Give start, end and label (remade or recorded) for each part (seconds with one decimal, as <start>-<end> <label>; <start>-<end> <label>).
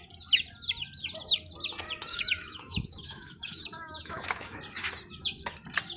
0.0-2.1 recorded; 2.1-4.6 remade; 4.6-6.0 recorded